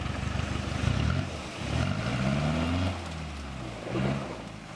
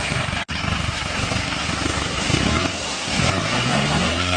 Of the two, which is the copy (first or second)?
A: second